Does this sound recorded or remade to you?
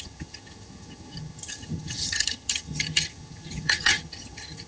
remade